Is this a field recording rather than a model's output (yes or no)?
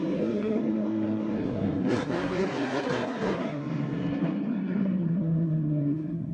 no